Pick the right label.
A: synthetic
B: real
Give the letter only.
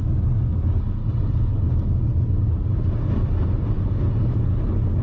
B